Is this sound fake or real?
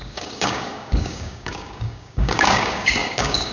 fake